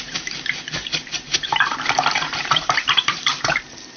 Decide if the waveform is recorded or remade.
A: remade